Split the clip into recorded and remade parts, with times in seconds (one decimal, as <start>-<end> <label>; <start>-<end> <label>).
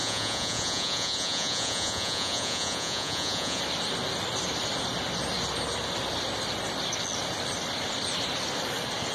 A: 0.0-3.6 remade; 3.6-9.1 recorded